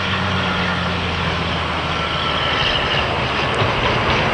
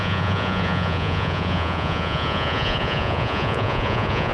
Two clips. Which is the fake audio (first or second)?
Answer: second